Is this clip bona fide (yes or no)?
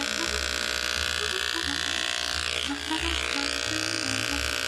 yes